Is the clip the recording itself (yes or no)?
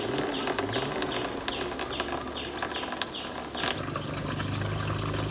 yes